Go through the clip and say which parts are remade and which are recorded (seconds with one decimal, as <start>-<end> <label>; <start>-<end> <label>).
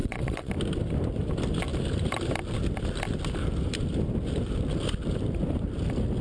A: 0.0-0.5 remade; 0.5-6.2 recorded